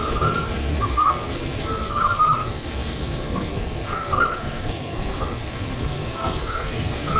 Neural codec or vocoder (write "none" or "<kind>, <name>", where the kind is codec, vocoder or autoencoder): codec, SNAC